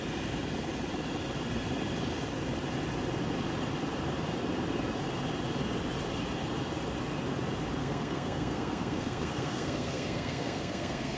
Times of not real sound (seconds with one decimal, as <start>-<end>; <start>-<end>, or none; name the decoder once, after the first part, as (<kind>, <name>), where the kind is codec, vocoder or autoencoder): 7.8-11.2 (codec, SNAC)